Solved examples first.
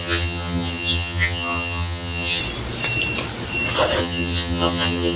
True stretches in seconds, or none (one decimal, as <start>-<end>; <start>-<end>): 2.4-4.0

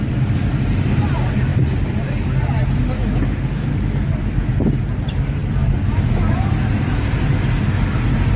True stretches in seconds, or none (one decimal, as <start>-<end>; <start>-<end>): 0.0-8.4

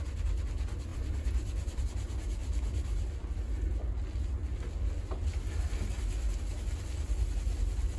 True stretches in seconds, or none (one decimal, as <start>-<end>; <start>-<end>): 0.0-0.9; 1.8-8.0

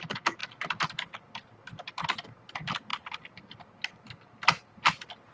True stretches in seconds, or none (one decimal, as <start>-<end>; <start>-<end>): 0.0-5.3